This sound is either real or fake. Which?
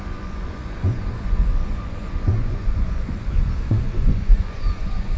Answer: fake